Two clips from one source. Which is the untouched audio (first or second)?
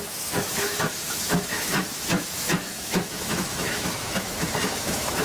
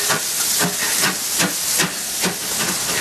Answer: second